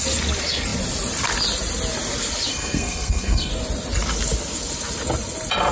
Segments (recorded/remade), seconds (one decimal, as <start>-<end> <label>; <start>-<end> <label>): 0.0-2.5 recorded; 2.5-3.5 remade; 3.5-5.7 recorded